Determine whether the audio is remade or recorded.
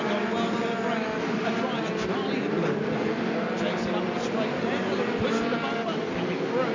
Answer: recorded